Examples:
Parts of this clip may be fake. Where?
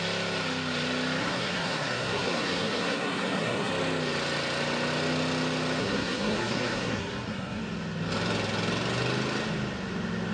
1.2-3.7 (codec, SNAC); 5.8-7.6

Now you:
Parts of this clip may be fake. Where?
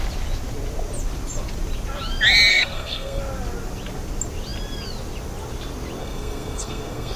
2.5-3.2 (codec, SNAC); 6.0-7.2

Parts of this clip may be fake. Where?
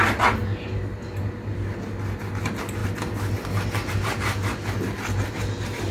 none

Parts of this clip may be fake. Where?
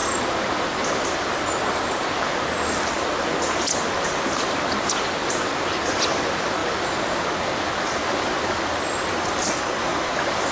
9.5-10.1 (codec, SNAC)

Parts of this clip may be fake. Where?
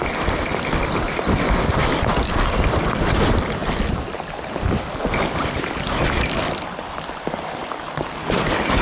none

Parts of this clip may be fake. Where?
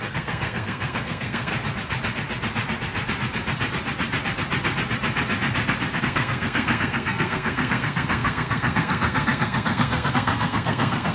0.0-1.5 (codec, SNAC); 6.0-11.1